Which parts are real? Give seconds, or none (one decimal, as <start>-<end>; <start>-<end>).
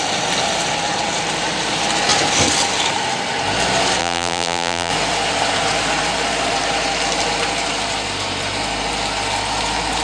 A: 0.0-4.0; 4.9-10.0